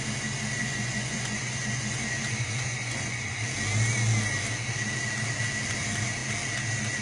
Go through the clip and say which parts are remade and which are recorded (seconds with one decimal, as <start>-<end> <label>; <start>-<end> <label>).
0.0-0.6 recorded; 0.6-3.4 remade; 3.4-7.0 recorded